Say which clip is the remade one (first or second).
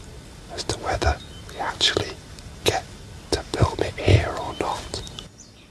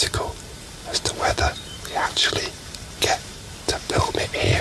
second